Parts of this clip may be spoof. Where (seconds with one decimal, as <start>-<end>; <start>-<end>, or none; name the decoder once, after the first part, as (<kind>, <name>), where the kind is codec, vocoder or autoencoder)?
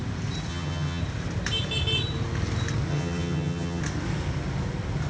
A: 0.5-1.0 (vocoder, HiFi-GAN); 2.9-3.8